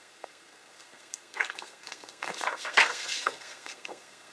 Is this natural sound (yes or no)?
no